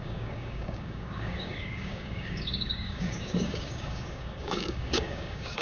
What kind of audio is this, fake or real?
fake